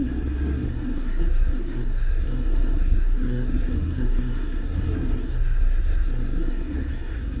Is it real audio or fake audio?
fake